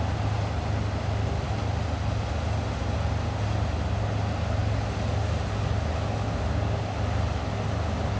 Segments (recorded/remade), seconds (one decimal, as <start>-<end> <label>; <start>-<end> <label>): 0.0-8.2 recorded